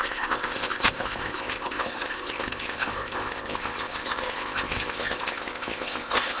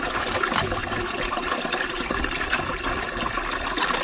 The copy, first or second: first